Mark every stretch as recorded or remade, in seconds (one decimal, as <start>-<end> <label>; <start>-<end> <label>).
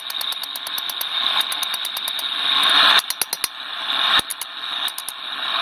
0.0-5.6 recorded